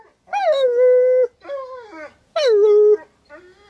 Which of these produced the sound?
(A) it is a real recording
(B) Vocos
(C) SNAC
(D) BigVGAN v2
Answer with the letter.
A